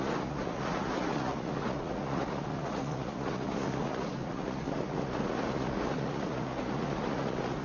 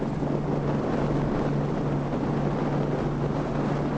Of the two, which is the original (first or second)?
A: second